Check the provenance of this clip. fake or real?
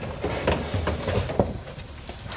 real